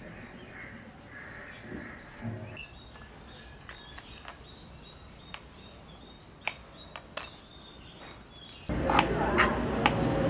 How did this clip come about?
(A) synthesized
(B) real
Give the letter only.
B